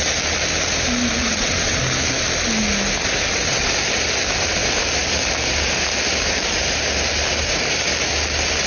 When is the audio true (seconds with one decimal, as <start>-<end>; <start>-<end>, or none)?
0.0-1.2; 1.8-3.0; 3.7-8.7